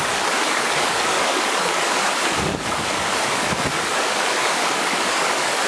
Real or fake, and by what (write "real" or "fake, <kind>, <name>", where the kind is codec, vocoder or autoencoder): fake, codec, DAC